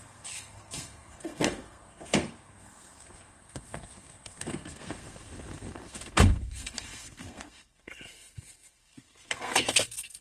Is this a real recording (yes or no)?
no